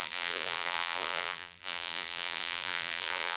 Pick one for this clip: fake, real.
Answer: fake